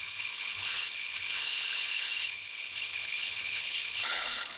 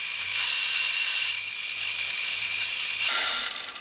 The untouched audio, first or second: second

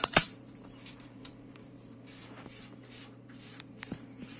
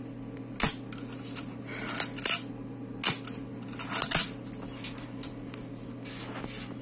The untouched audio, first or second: second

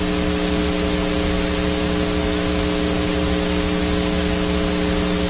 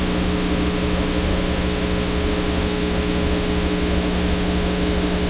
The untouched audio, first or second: first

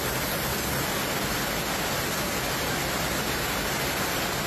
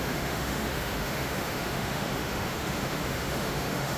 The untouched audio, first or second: first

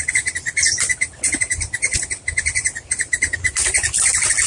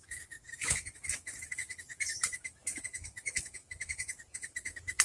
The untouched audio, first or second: first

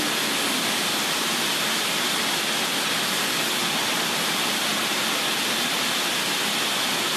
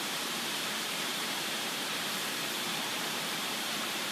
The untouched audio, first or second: first